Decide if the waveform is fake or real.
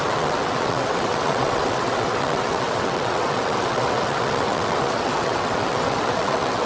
fake